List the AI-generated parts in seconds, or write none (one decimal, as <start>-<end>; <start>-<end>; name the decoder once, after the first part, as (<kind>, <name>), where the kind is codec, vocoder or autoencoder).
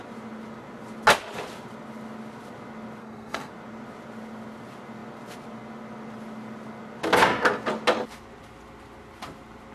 3.0-3.5 (codec, SNAC)